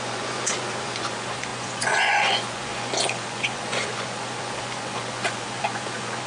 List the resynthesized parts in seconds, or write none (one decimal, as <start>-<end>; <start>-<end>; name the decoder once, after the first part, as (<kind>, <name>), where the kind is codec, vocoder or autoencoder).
0.0-6.3 (vocoder, Vocos)